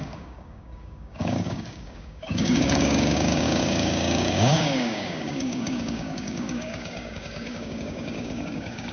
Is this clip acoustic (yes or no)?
no